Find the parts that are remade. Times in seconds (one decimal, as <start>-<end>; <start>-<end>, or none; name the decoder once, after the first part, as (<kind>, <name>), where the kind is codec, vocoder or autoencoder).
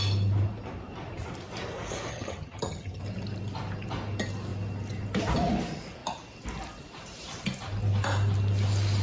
2.1-3.0 (vocoder, HiFi-GAN)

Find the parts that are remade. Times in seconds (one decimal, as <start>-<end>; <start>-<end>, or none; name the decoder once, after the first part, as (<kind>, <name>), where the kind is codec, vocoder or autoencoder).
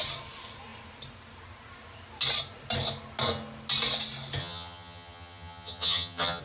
4.4-6.4 (vocoder, HiFi-GAN)